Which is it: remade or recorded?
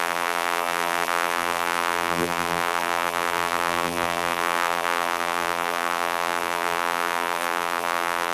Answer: remade